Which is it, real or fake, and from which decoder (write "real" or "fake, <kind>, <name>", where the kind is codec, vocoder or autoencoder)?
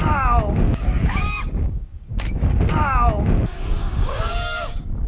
fake, codec, DAC